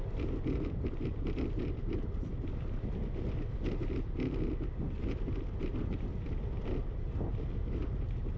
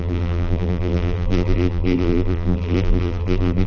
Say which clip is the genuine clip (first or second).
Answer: first